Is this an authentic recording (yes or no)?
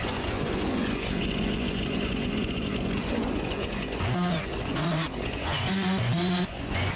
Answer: no